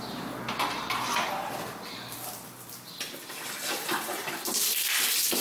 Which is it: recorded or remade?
remade